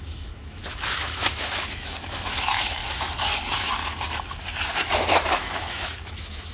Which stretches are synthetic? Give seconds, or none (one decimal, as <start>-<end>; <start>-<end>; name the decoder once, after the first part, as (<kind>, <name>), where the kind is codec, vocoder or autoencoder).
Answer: 0.0-2.8 (autoencoder, DAC-VAE); 4.7-6.5